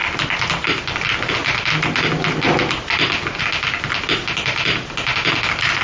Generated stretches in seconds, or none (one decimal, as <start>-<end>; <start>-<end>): none